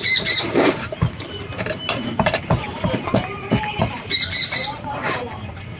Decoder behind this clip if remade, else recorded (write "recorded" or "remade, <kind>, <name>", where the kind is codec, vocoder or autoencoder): remade, vocoder, BigVGAN v2